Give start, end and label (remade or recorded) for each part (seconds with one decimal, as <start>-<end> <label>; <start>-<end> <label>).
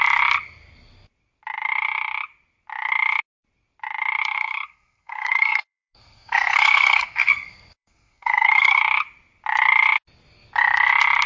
0.0-4.3 recorded; 4.3-8.8 remade; 8.8-11.3 recorded